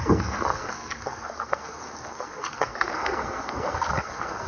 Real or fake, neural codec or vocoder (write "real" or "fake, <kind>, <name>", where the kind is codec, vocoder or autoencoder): fake, codec, SNAC